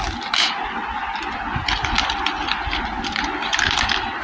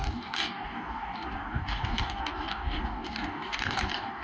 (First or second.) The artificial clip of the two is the second